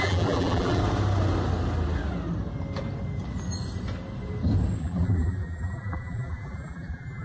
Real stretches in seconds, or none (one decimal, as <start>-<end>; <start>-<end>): 0.8-4.8